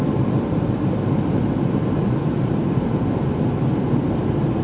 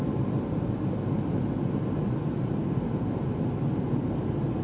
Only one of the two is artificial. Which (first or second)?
first